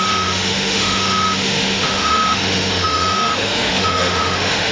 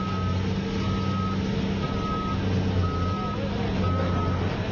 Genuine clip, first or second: second